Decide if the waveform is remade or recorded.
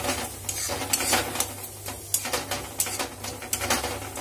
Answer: recorded